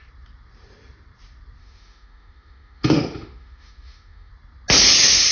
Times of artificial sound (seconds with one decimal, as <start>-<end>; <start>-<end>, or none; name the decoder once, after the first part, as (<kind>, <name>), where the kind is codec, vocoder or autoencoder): 1.6-4.3 (autoencoder, DAC-VAE)